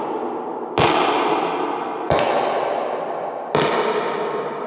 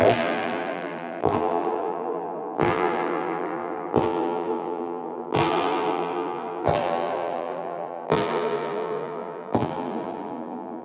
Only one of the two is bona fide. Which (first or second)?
first